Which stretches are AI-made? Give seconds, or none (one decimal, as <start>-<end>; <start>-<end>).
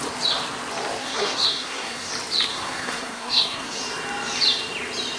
1.0-2.1; 2.5-3.8